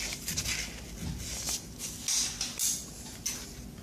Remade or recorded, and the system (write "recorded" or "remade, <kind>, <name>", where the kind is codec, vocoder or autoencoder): recorded